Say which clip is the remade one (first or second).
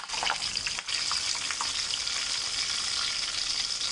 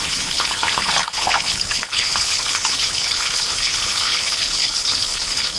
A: second